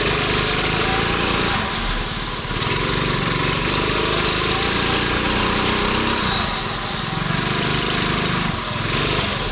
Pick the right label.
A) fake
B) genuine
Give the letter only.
B